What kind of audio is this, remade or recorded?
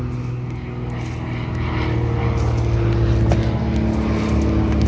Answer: recorded